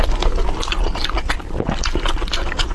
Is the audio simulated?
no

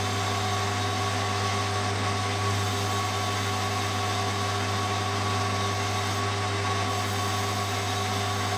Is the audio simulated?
no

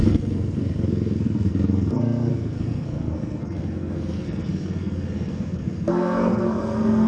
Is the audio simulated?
yes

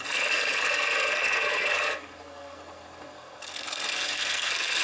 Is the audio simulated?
yes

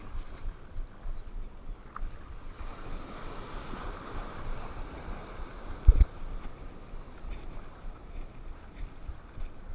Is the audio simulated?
no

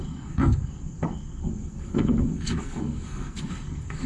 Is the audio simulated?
yes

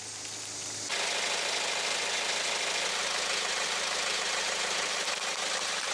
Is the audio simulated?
no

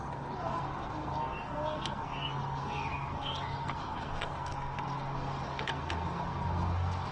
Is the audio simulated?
yes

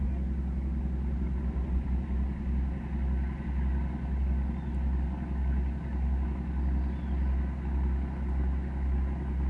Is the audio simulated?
no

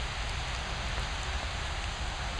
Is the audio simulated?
no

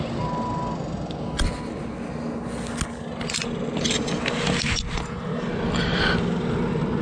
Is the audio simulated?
no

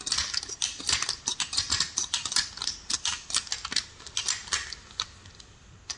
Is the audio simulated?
no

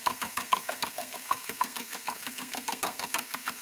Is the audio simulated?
yes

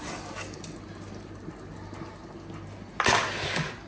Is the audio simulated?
no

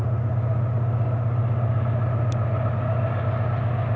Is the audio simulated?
no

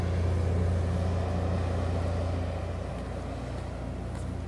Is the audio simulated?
no